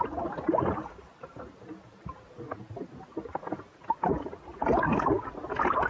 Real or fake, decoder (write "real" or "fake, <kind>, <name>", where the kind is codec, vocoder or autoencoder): real